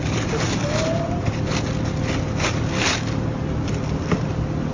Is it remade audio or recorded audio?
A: recorded